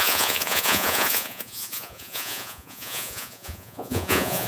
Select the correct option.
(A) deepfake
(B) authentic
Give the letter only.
A